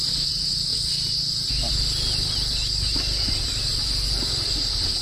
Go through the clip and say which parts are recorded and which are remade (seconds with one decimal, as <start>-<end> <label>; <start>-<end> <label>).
0.0-5.0 recorded